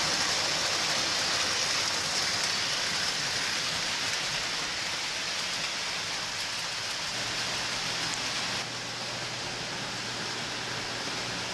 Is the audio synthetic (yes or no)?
no